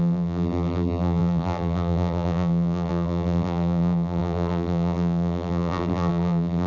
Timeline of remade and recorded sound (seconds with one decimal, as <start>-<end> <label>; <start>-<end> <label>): 0.0-6.7 remade